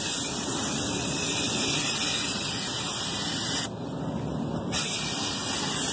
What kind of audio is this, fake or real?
real